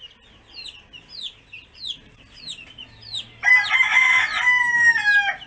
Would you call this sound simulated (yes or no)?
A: no